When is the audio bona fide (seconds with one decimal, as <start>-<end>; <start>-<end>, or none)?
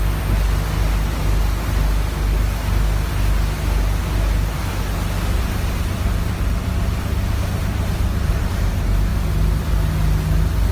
0.0-4.6; 8.5-9.1; 9.7-10.7